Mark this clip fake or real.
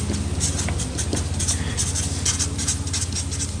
real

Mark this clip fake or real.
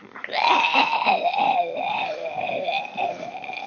real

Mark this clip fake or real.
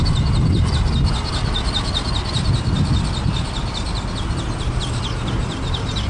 real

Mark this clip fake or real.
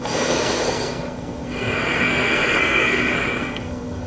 fake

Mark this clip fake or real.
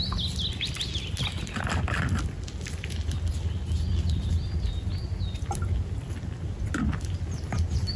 real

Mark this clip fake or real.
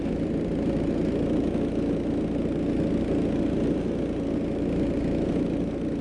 real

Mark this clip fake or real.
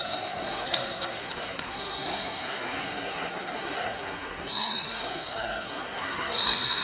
fake